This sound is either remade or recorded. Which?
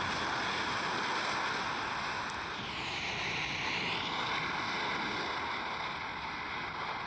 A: recorded